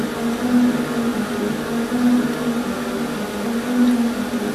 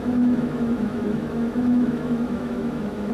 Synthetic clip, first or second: second